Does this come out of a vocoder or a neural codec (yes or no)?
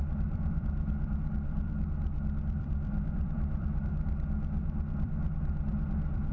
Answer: yes